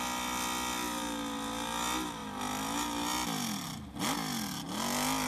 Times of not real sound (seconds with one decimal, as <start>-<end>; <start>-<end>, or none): none